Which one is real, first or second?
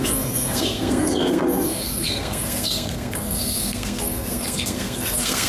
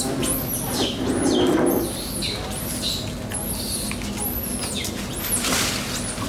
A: second